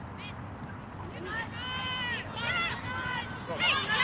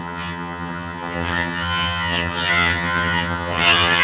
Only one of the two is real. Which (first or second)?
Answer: first